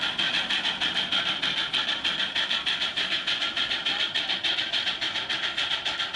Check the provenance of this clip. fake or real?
real